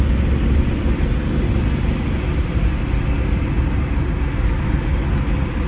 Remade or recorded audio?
recorded